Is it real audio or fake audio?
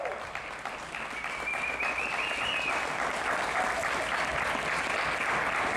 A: real